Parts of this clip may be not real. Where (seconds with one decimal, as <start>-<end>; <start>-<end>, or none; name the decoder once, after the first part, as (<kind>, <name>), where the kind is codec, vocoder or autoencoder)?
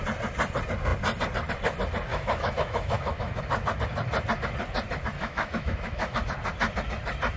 2.1-3.4 (autoencoder, DAC-VAE); 5.1-6.2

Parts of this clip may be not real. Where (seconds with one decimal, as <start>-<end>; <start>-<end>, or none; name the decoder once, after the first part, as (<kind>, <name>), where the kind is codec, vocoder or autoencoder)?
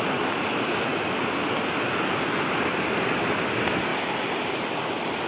none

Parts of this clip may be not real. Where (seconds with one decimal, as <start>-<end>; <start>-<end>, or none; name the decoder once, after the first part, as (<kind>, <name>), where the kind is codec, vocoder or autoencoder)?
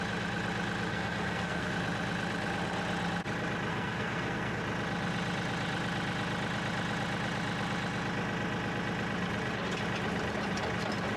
0.9-1.7 (codec, SNAC); 3.7-4.6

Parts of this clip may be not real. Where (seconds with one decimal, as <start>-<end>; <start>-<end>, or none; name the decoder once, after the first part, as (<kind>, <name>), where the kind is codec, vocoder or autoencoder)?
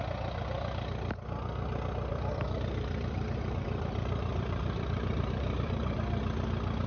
2.1-6.2 (vocoder, BigVGAN v2)